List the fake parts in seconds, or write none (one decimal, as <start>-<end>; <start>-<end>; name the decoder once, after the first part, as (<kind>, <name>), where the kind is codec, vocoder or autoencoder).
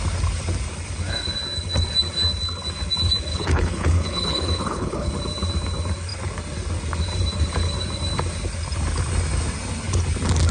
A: 3.3-5.1 (codec, HILCodec)